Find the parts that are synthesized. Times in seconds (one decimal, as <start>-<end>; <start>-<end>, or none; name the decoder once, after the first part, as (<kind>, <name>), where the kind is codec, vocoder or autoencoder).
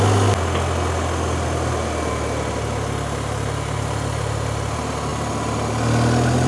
none